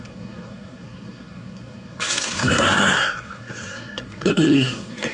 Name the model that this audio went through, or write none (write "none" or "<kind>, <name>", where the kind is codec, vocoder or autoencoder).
codec, SNAC